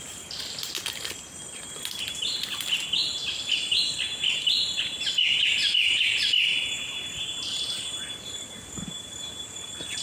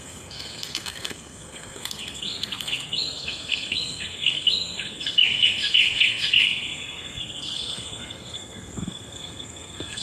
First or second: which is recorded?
first